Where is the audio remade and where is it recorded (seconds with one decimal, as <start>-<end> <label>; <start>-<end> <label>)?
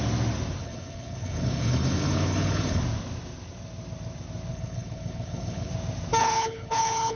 0.0-0.6 recorded; 0.6-2.8 remade; 2.8-4.5 recorded; 4.5-5.7 remade; 5.7-6.2 recorded; 6.2-7.2 remade